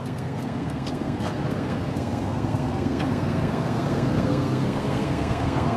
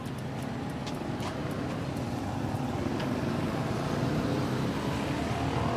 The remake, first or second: first